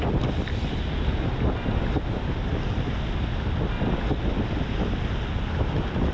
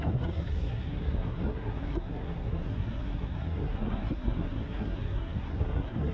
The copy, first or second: second